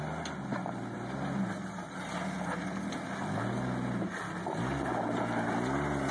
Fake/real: real